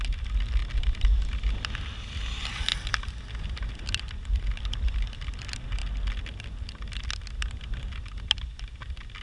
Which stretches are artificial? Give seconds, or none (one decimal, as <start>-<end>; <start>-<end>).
none